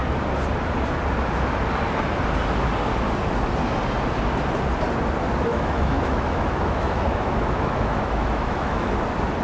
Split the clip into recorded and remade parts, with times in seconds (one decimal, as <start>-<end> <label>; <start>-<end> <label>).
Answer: 0.0-5.5 recorded; 5.5-8.9 remade; 8.9-9.4 recorded

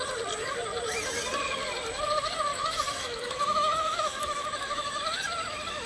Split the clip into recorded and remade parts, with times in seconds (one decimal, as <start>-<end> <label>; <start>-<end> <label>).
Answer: 0.0-2.5 recorded; 2.5-5.0 remade; 5.0-5.9 recorded

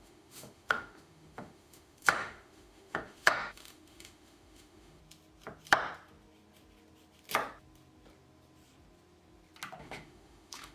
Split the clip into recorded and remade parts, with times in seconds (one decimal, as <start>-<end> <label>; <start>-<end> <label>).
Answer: 0.0-5.0 remade; 5.0-9.8 recorded; 9.8-10.7 remade

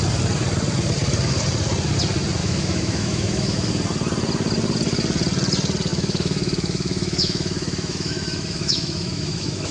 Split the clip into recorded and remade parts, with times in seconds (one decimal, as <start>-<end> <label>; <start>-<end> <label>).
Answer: 0.0-2.4 recorded; 2.4-3.7 remade; 3.7-5.9 recorded; 5.9-9.7 remade